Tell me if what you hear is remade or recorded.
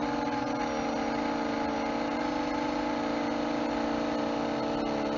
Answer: recorded